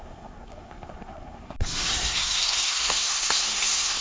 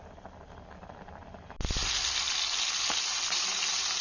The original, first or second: second